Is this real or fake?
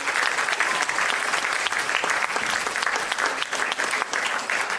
real